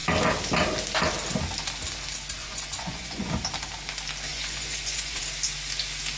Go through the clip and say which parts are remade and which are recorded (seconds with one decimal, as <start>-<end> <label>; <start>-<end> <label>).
0.0-2.4 recorded; 2.4-3.3 remade; 3.3-4.3 recorded; 4.3-5.2 remade; 5.2-6.2 recorded